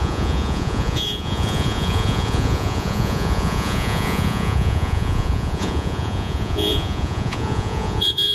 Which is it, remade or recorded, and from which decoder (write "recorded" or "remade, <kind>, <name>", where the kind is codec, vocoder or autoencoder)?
remade, vocoder, Vocos